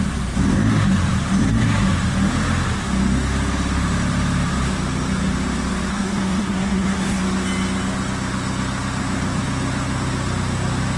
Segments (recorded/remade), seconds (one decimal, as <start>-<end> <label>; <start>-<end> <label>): 0.0-5.9 recorded; 5.9-7.2 remade; 7.2-11.0 recorded